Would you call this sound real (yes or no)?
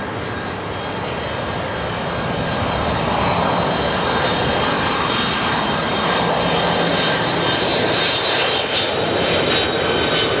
yes